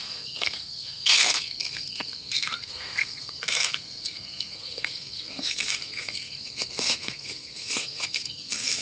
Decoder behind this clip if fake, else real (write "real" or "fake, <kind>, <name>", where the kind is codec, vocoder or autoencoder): fake, codec, SNAC